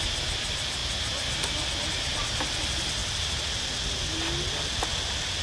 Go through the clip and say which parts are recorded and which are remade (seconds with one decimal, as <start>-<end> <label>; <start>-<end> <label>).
0.0-5.4 recorded